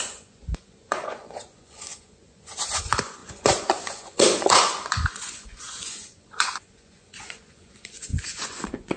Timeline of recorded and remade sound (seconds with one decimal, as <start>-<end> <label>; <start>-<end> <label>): 0.0-9.0 remade